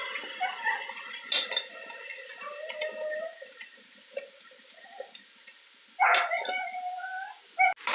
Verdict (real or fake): real